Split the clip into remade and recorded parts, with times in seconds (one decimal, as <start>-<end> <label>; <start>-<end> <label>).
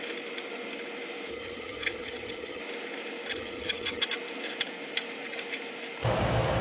0.0-1.3 recorded; 1.3-2.6 remade; 2.6-3.3 recorded; 3.3-4.0 remade; 4.0-6.6 recorded